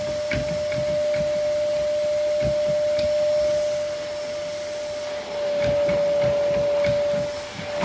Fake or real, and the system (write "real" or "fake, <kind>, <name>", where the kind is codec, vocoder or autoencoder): real